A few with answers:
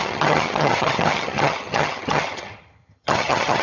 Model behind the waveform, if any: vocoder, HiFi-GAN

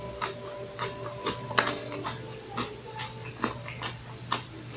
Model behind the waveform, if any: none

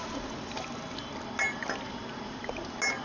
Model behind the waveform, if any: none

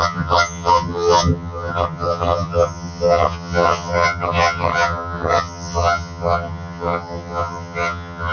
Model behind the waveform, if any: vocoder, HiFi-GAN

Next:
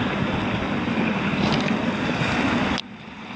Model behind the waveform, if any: none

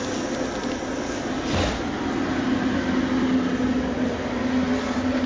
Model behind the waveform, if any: none